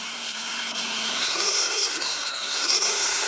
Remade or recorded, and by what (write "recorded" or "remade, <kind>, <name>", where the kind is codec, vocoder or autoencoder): remade, codec, SNAC